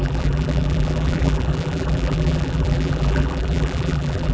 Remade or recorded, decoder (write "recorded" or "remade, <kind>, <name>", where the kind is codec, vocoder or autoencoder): remade, vocoder, BigVGAN v2